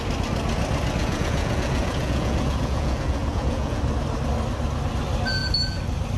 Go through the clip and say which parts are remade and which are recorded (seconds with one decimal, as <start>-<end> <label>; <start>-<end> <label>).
0.0-1.0 recorded; 1.0-3.8 remade; 3.8-6.2 recorded